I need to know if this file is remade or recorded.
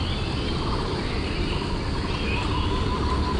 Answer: recorded